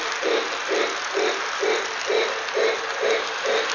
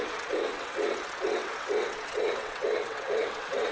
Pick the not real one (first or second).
second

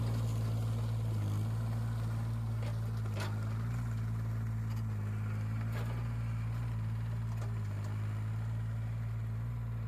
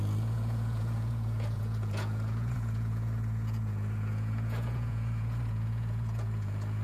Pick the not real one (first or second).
second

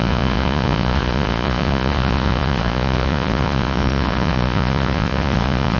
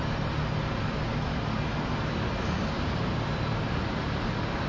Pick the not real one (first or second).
first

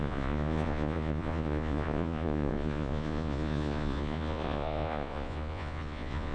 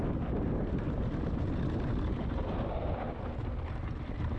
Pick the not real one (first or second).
first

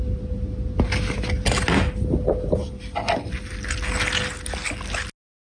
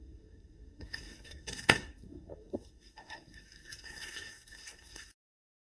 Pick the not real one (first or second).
second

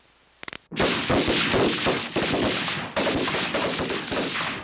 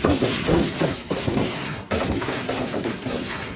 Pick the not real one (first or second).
second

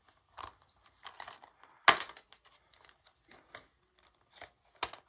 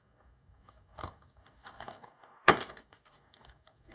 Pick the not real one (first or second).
second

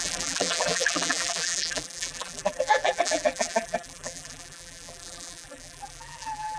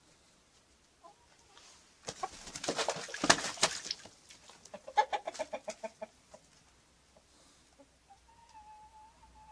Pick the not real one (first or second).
first